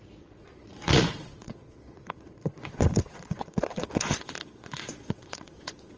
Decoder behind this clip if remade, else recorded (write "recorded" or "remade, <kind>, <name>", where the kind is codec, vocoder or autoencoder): remade, vocoder, Vocos